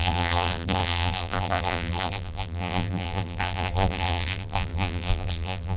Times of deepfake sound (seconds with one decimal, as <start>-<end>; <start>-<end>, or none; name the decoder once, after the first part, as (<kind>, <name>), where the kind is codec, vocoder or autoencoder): 0.0-5.8 (vocoder, BigVGAN v2)